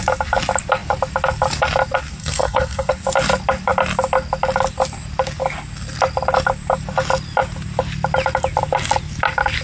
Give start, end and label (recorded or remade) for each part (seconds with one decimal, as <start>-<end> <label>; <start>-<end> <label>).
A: 0.0-2.2 recorded; 2.2-2.9 remade; 2.9-9.6 recorded